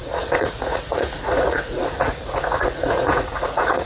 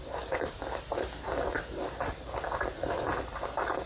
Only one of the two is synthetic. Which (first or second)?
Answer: first